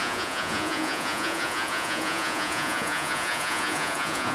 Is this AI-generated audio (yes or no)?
yes